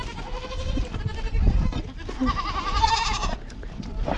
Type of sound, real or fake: real